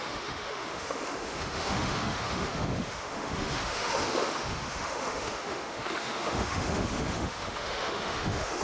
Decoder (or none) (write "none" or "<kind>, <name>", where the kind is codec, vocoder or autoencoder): autoencoder, DAC-VAE